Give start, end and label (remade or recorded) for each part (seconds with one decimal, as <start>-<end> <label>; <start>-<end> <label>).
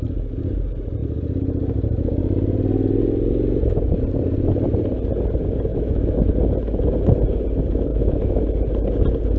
0.0-5.7 recorded; 5.7-6.3 remade; 6.3-7.9 recorded; 7.9-8.4 remade; 8.4-9.4 recorded